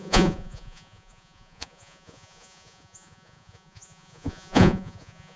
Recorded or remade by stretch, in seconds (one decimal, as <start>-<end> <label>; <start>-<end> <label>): 0.0-5.4 remade